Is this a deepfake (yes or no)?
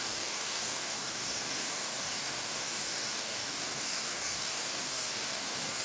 yes